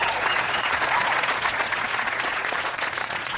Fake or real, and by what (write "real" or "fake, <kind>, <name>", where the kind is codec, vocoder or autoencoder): fake, vocoder, Vocos